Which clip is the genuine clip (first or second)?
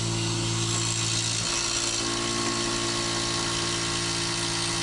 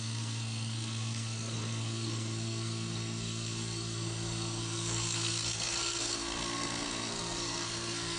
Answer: first